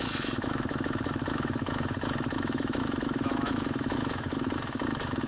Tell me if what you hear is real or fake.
fake